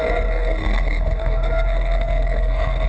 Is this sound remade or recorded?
remade